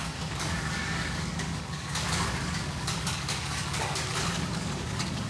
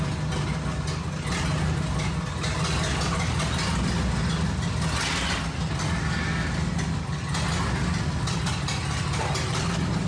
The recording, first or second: second